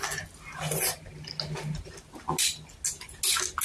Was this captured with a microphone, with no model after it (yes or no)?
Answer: yes